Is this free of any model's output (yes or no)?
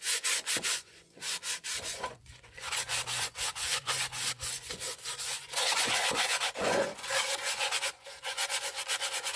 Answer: no